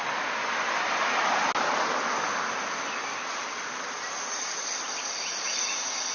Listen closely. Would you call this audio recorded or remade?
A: recorded